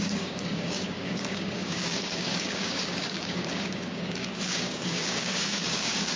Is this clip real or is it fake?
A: fake